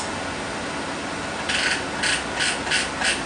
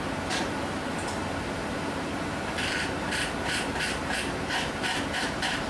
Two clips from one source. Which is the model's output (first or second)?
second